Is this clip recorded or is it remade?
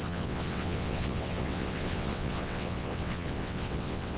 remade